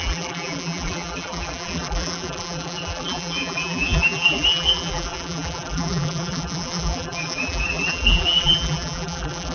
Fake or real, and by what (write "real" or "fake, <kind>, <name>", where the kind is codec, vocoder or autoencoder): fake, vocoder, BigVGAN v2